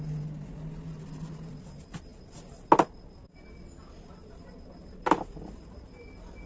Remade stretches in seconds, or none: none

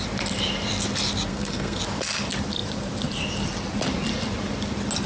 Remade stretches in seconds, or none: 1.3-1.8

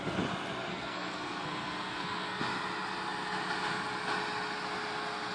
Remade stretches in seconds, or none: 0.7-2.4

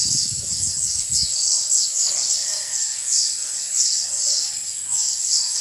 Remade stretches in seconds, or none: 0.0-5.6

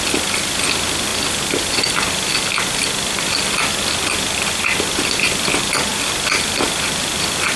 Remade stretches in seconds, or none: none

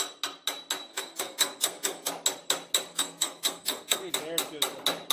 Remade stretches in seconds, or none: 0.9-2.1; 2.9-4.1